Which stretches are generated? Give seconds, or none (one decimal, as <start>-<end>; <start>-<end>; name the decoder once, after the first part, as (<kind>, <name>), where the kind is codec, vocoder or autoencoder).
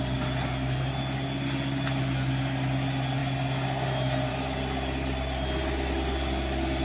none